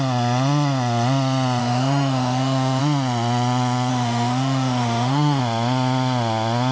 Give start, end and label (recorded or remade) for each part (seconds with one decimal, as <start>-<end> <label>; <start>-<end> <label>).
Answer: 0.0-1.6 recorded; 1.6-2.8 remade; 2.8-3.9 recorded; 3.9-5.4 remade; 5.4-6.7 recorded